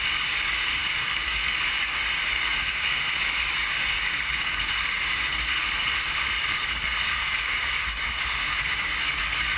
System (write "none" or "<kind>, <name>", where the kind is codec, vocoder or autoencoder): codec, DAC